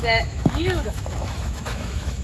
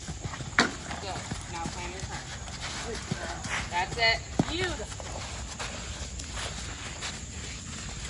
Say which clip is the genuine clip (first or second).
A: second